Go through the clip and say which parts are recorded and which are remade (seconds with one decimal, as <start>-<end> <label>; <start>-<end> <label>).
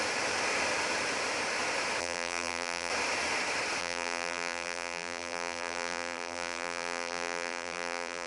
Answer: 0.0-2.0 recorded; 2.0-2.9 remade; 2.9-3.8 recorded; 3.8-8.3 remade